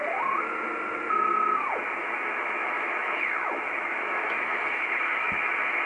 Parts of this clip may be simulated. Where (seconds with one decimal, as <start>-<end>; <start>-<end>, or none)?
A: 2.0-5.5